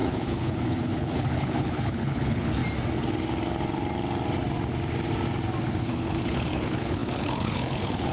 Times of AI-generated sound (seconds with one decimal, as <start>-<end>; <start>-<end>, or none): 0.0-2.6; 5.8-8.1